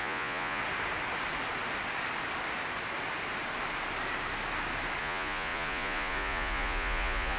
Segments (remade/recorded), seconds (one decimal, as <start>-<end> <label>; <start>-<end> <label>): 0.0-0.6 remade; 0.6-5.0 recorded; 5.0-7.4 remade